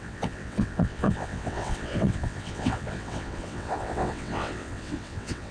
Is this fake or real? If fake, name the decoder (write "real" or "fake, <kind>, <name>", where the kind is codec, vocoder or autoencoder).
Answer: fake, vocoder, WaveNeXt